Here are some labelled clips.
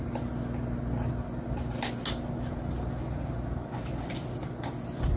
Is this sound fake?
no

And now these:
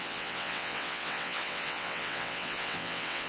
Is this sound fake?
yes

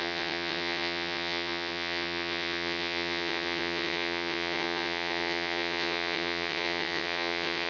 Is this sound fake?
yes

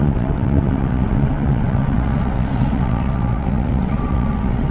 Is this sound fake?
yes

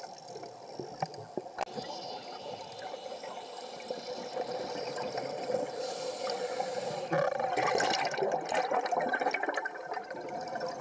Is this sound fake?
no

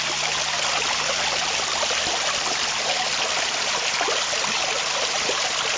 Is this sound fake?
no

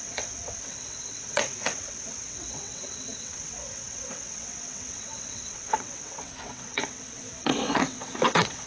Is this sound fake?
yes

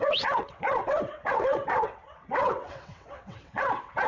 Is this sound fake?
yes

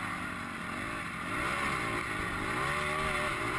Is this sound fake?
no